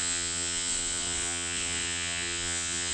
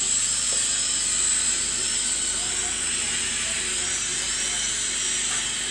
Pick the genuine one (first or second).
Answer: second